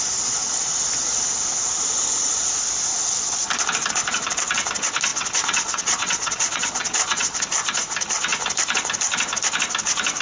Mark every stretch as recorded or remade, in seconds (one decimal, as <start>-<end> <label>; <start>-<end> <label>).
0.0-2.9 recorded; 2.9-3.5 remade; 3.5-5.1 recorded; 5.1-7.4 remade; 7.4-10.2 recorded